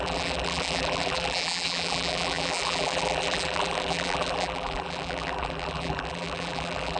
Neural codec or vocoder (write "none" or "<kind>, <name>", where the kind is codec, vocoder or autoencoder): vocoder, BigVGAN v2